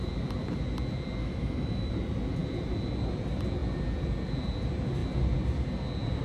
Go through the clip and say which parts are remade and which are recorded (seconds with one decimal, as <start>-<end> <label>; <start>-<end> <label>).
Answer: 0.0-1.2 recorded; 1.2-1.9 remade; 1.9-6.2 recorded